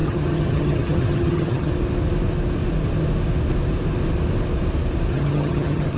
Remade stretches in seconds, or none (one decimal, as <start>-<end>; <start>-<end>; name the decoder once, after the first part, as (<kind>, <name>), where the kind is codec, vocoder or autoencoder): 0.0-1.7 (vocoder, HiFi-GAN); 5.1-6.0